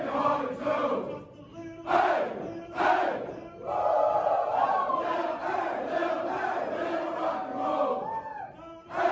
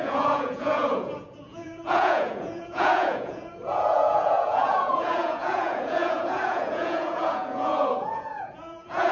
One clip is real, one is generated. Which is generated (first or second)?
second